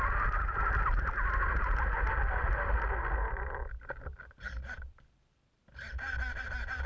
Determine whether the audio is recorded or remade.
recorded